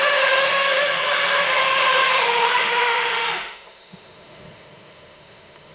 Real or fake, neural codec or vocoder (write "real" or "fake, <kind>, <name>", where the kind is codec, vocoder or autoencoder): fake, autoencoder, DAC-VAE